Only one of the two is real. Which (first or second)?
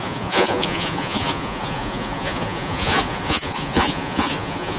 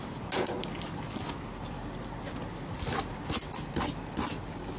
second